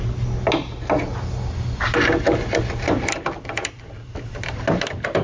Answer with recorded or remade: recorded